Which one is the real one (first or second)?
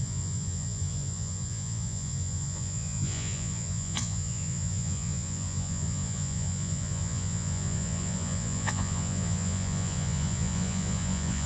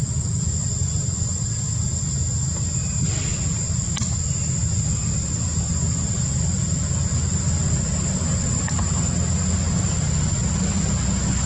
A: second